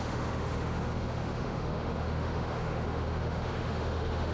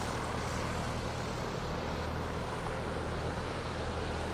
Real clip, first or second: second